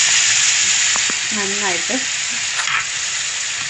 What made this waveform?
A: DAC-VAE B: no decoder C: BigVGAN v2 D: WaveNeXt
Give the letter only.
B